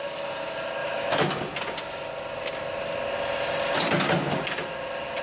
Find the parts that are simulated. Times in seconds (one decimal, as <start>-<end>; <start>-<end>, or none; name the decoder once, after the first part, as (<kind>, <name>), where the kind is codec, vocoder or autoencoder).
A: 0.8-1.3 (autoencoder, DAC-VAE)